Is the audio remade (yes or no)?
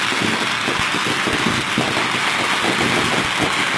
no